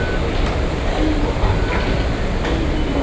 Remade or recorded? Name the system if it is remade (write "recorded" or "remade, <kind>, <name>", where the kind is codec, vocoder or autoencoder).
recorded